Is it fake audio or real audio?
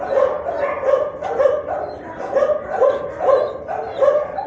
real